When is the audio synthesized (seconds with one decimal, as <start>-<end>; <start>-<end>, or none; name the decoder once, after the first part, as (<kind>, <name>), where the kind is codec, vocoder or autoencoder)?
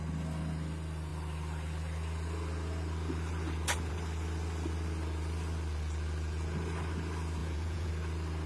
7.4-7.9 (vocoder, Vocos)